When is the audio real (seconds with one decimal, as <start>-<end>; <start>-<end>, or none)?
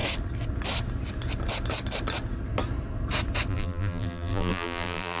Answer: 0.0-3.5